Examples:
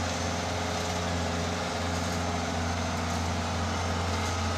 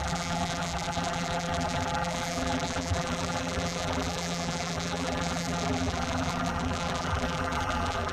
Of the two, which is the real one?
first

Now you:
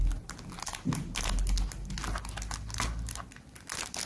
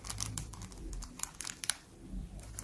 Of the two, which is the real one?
first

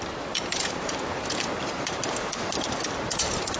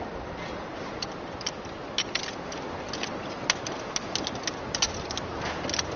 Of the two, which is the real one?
second